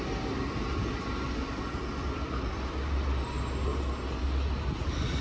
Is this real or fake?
real